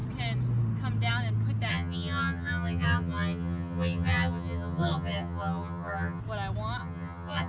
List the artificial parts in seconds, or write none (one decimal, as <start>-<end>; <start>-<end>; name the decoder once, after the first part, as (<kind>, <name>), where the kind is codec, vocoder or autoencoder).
1.7-6.2 (vocoder, HiFi-GAN); 6.8-7.5